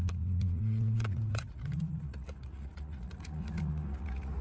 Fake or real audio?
fake